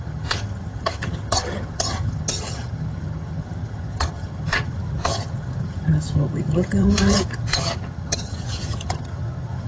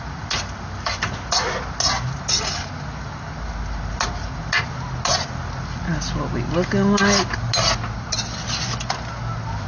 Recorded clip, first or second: second